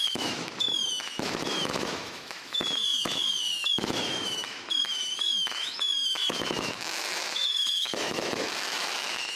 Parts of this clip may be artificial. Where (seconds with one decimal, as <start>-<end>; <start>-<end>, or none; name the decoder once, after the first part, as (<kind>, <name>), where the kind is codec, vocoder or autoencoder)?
0.0-9.4 (autoencoder, DAC-VAE)